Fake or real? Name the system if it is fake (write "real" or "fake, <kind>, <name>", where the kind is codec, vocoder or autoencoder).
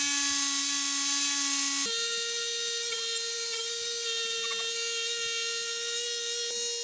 real